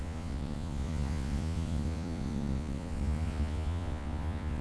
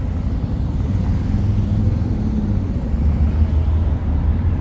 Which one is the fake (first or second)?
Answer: first